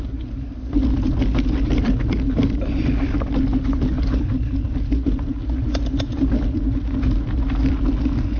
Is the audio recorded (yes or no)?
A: yes